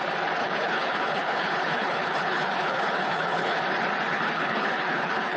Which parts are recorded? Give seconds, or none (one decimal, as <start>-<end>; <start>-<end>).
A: 0.0-0.4; 3.6-4.1